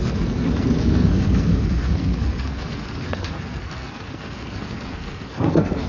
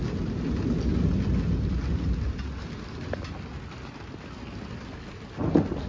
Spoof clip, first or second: first